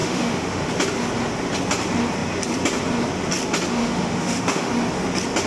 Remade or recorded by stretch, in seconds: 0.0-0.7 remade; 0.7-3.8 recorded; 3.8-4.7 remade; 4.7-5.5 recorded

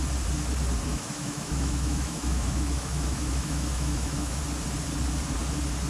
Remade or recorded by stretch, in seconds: 0.0-0.9 recorded; 0.9-4.4 remade; 4.4-5.9 recorded